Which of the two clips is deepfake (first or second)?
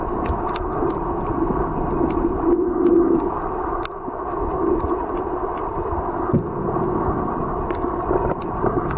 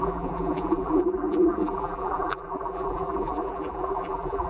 second